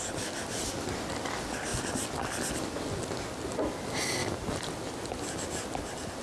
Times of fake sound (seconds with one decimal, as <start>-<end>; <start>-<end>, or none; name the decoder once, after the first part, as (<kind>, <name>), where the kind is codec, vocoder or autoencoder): none